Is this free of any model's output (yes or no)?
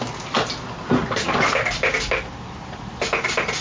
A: yes